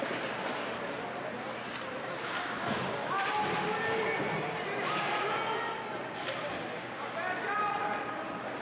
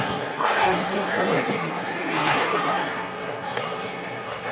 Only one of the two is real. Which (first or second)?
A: first